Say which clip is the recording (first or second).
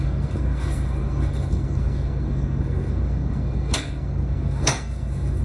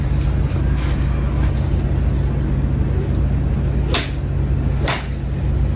second